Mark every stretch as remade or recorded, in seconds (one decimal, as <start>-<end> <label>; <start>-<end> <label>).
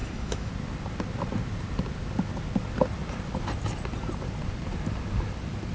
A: 0.0-0.5 remade; 0.5-5.7 recorded